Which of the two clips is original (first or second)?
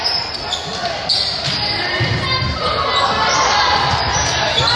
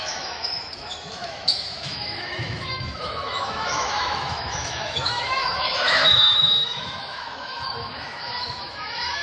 first